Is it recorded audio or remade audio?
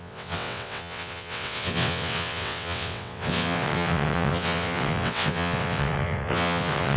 remade